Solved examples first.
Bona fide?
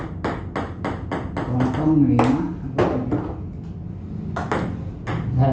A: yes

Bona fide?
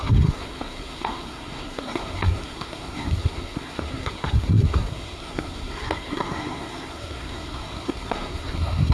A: no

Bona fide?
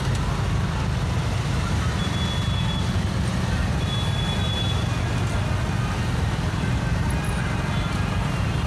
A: yes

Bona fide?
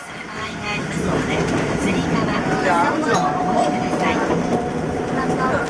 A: no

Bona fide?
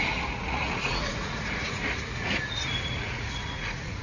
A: no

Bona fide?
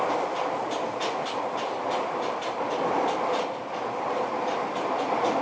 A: yes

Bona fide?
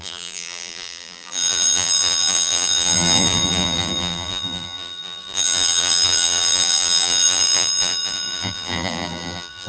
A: no